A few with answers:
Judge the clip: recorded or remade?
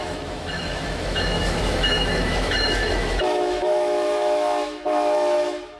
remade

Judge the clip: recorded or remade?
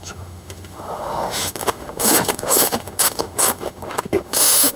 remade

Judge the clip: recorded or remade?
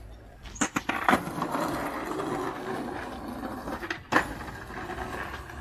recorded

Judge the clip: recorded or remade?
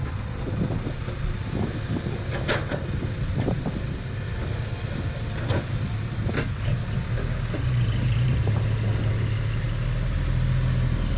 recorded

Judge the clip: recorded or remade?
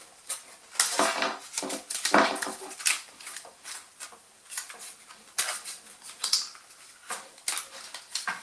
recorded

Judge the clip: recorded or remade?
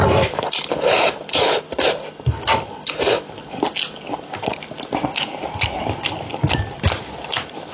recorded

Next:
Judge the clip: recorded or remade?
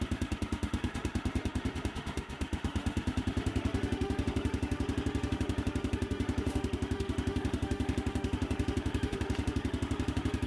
remade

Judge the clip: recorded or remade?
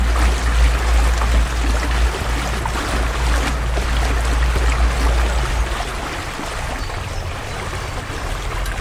recorded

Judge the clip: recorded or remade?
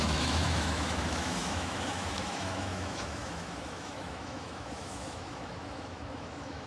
remade